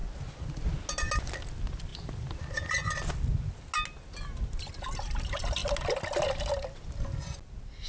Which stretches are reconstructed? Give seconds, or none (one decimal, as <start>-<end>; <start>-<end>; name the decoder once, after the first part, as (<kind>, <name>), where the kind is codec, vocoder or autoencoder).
none